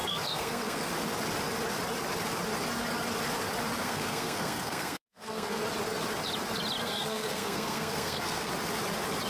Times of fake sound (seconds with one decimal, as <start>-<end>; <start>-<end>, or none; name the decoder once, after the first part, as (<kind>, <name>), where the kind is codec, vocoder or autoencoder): 0.0-0.9 (codec, SNAC); 3.8-5.6; 6.8-8.5